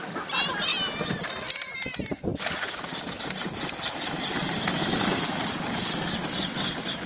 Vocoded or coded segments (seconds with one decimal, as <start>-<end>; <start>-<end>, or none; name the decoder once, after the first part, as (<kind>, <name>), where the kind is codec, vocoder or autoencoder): none